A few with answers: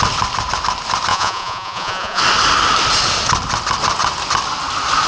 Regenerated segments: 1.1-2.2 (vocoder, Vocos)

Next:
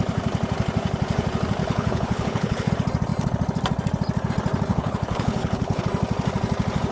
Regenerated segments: 1.6-2.7 (codec, HILCodec); 4.7-5.8